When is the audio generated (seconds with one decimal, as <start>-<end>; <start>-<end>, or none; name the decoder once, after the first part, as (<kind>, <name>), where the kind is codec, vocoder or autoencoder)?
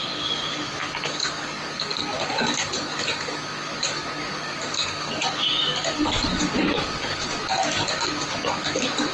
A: 0.0-9.1 (codec, DAC)